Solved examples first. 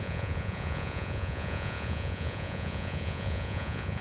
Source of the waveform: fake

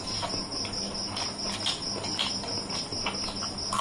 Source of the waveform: real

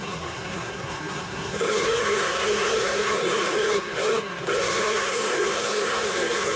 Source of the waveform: fake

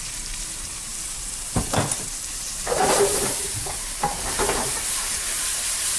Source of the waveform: fake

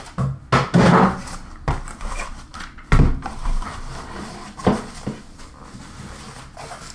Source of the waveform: real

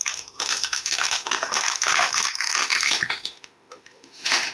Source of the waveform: fake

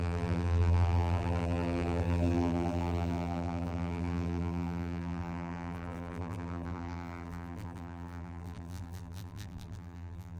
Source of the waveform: fake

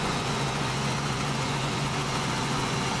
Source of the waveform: fake